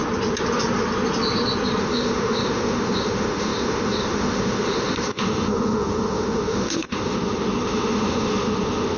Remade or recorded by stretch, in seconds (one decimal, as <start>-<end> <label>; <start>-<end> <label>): 0.0-1.8 recorded; 1.8-9.0 remade